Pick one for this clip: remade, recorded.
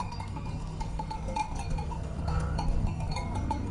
remade